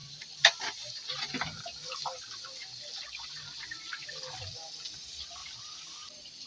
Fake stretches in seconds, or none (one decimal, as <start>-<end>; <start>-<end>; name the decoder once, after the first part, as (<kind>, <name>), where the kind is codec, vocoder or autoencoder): 3.9-5.4 (vocoder, BigVGAN v2)